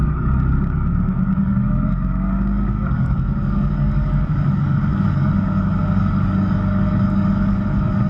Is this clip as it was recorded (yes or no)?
no